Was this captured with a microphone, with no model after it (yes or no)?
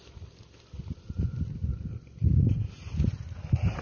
yes